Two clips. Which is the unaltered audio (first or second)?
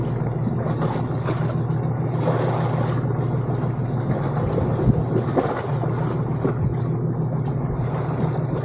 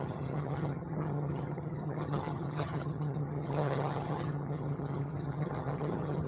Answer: first